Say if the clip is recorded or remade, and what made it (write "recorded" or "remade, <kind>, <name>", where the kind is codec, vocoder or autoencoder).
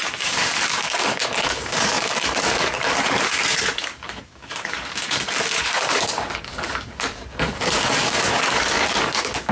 remade, codec, DAC